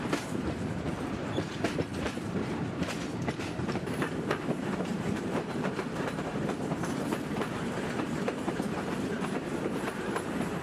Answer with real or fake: fake